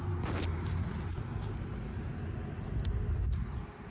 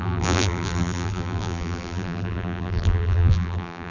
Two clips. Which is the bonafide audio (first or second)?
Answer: first